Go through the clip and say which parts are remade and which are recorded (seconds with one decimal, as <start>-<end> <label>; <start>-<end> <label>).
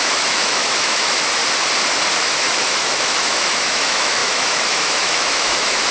0.0-1.4 remade; 1.4-2.2 recorded; 2.2-5.9 remade